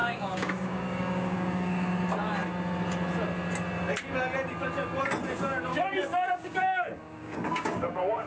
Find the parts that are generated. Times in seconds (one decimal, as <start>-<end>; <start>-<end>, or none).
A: 0.0-2.0; 5.7-8.3